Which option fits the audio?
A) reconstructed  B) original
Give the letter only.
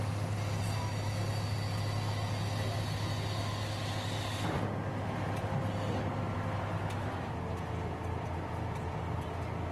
B